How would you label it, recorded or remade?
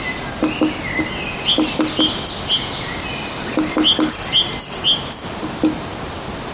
recorded